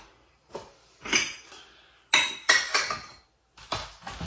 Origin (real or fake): real